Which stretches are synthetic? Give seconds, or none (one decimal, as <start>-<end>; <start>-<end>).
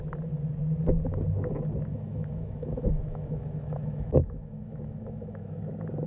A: 1.9-5.6